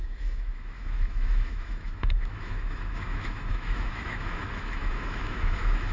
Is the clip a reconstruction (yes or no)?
yes